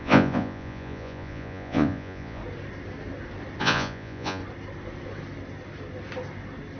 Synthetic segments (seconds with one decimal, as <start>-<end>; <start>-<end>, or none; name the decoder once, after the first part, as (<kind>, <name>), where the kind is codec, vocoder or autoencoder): 0.0-2.4 (vocoder, Vocos); 3.6-4.4